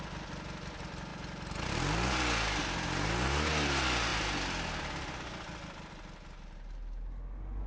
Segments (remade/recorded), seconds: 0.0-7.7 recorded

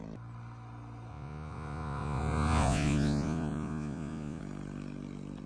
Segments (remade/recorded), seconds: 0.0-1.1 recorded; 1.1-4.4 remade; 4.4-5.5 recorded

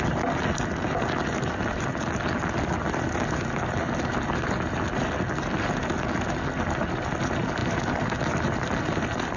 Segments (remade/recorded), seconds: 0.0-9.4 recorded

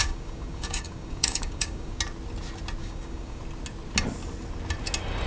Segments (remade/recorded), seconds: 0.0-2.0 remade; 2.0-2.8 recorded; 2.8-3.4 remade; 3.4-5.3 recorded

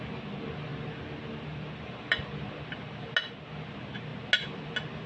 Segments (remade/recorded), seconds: 0.0-5.1 recorded